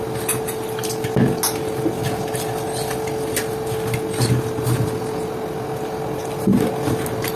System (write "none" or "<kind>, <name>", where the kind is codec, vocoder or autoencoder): none